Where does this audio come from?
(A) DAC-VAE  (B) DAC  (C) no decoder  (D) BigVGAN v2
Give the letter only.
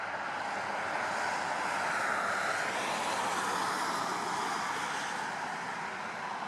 C